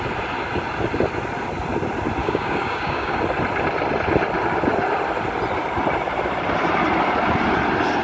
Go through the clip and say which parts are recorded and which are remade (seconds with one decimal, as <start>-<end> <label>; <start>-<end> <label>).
0.0-2.2 recorded; 2.2-3.2 remade; 3.2-8.0 recorded